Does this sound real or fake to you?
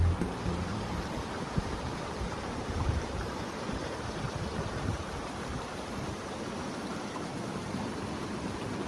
fake